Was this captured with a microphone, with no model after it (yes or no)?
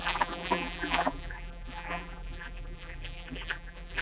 no